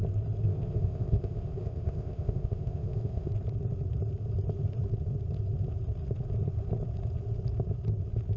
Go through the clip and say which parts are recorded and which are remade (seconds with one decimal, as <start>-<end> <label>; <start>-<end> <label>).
0.0-0.4 recorded; 0.4-3.3 remade; 3.3-8.4 recorded